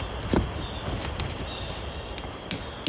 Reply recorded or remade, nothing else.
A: recorded